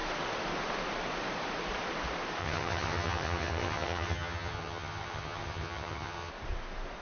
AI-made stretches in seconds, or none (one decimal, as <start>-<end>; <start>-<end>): 2.4-6.3